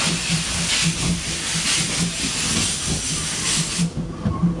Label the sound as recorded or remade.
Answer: recorded